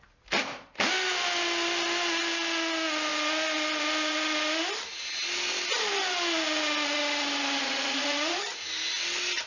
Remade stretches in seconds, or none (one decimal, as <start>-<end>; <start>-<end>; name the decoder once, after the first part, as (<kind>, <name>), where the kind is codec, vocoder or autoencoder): 7.6-8.7 (vocoder, Vocos)